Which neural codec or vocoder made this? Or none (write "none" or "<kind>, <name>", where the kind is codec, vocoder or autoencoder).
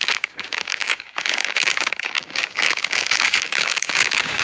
codec, DAC